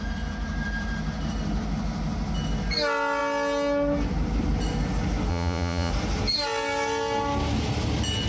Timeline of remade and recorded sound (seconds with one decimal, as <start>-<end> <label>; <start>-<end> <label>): 0.0-5.3 recorded; 5.3-5.9 remade; 5.9-8.3 recorded